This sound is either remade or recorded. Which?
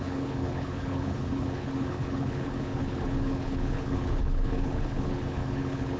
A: remade